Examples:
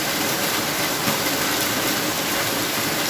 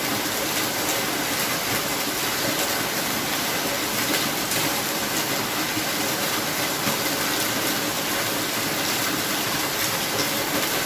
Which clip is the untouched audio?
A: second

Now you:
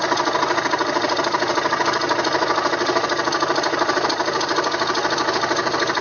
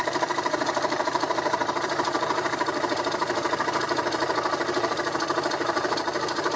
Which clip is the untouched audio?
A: first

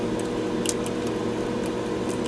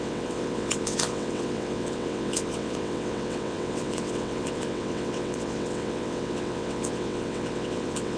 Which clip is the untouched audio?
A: first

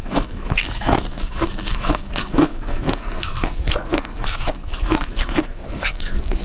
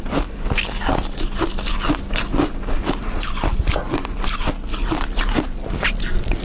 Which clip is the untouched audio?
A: second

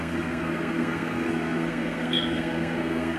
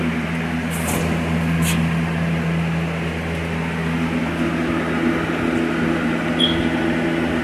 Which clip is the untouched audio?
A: second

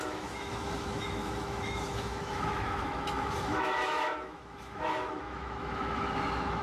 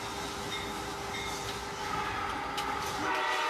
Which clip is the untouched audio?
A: second